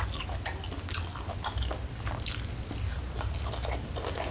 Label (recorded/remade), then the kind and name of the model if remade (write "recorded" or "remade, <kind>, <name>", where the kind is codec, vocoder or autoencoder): recorded